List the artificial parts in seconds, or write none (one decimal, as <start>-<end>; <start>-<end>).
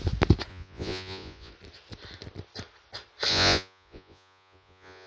0.5-1.5; 3.3-5.1